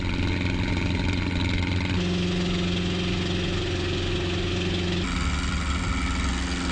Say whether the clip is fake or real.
real